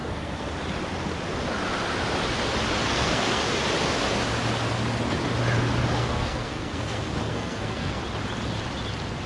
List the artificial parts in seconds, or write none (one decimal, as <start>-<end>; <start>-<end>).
0.0-0.5; 2.8-3.4; 6.0-8.0